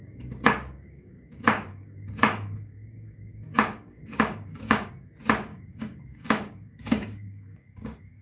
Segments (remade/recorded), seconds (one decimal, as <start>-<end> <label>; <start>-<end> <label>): 0.0-4.9 remade; 4.9-5.5 recorded; 5.5-8.2 remade